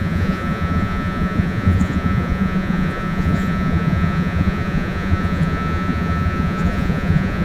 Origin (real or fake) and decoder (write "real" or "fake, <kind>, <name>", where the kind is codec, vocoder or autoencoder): fake, vocoder, Vocos